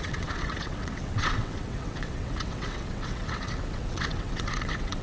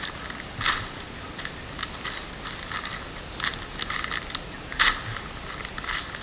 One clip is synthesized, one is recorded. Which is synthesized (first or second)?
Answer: first